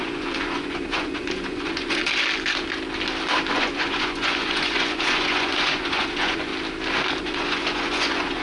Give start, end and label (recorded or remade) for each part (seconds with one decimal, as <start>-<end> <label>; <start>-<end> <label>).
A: 0.0-2.0 remade; 2.0-3.5 recorded; 3.5-6.5 remade; 6.5-7.2 recorded; 7.2-8.4 remade